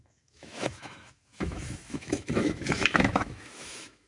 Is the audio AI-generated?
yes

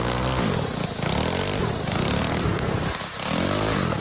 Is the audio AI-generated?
no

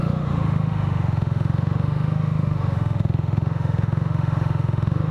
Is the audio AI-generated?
yes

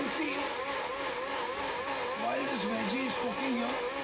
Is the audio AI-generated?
no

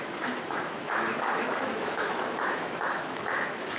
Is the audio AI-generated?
yes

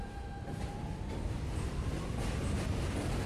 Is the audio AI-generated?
no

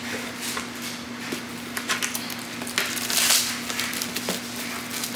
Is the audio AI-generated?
no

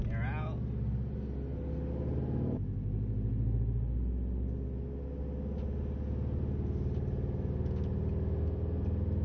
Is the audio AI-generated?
no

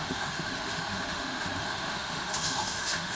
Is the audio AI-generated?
yes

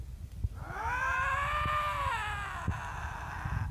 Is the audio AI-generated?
no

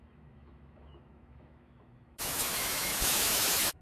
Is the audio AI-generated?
yes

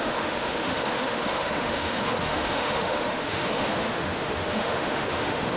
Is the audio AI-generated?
yes